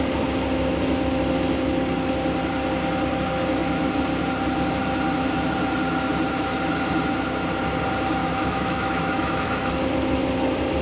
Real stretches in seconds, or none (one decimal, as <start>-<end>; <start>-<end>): 0.0-8.2; 9.7-10.8